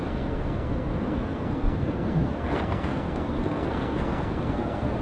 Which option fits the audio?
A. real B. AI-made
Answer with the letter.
B